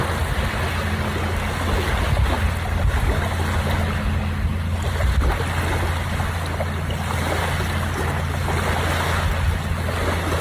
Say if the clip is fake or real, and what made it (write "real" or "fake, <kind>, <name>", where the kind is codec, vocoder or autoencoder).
real